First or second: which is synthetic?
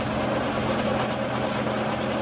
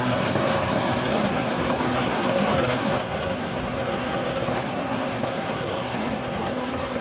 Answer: second